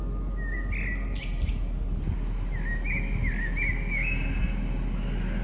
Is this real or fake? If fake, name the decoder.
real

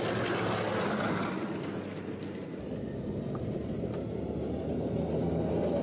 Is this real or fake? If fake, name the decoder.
real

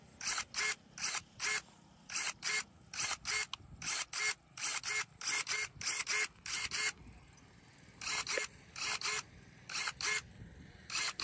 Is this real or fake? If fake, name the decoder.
real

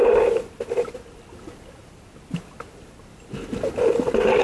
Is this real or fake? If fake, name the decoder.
real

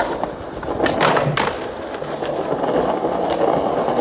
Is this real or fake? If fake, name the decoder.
real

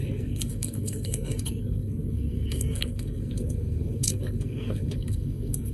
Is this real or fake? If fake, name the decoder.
fake, codec, SNAC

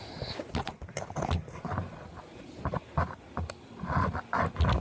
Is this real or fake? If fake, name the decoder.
real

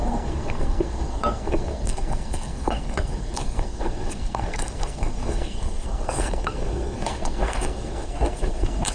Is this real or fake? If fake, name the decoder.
fake, codec, SNAC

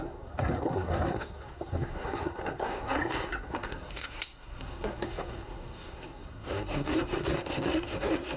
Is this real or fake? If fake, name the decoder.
fake, codec, SNAC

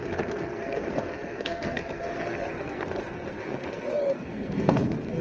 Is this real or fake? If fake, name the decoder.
fake, codec, SNAC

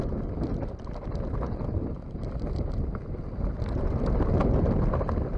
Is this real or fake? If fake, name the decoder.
real